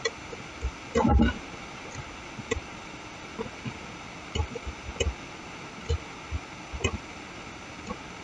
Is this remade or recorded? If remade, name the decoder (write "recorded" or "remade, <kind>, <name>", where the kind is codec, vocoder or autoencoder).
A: recorded